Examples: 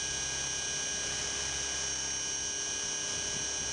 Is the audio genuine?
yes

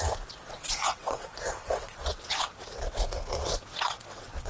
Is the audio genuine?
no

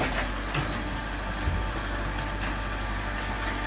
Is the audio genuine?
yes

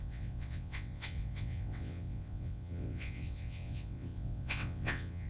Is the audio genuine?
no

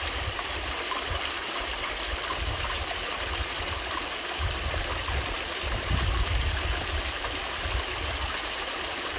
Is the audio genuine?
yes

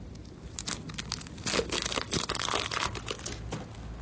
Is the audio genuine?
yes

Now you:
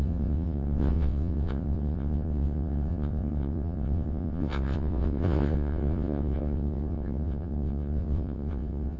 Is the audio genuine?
no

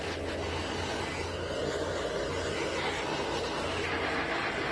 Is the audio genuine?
yes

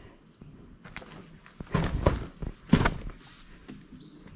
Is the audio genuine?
yes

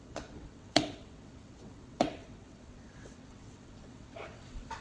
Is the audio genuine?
no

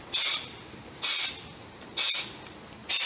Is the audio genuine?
yes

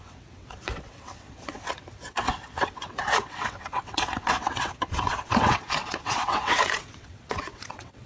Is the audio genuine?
no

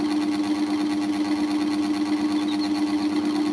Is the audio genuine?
yes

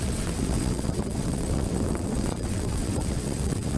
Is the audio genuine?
no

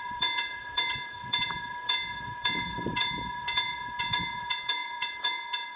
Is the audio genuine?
no